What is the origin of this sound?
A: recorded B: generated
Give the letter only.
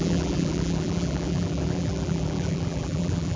B